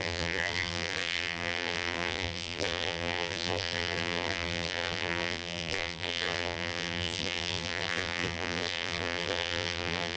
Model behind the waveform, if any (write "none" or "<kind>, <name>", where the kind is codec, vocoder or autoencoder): vocoder, BigVGAN v2